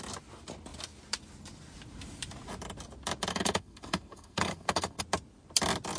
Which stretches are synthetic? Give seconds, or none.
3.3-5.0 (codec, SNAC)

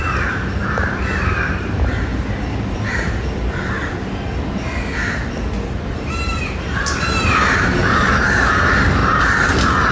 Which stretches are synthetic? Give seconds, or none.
0.0-2.1 (vocoder, BigVGAN v2); 5.7-9.0

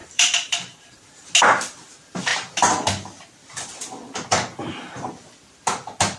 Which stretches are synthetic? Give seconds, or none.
0.0-1.3 (vocoder, BigVGAN v2)

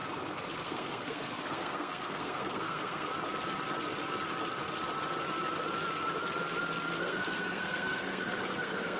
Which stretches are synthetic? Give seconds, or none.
0.6-3.1 (codec, SNAC); 7.0-9.0

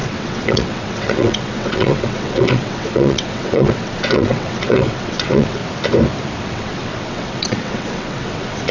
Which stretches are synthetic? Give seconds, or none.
0.0-5.6 (vocoder, WaveNeXt); 6.4-8.7

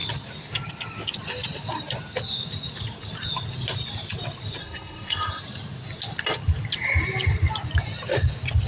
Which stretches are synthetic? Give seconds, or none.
4.6-5.4 (codec, SNAC)

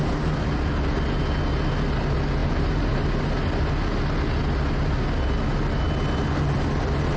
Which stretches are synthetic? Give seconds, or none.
2.4-3.3 (vocoder, BigVGAN v2)

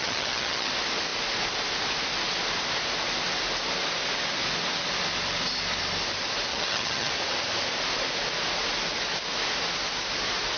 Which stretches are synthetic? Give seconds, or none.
0.0-0.7 (vocoder, HiFi-GAN); 6.5-7.1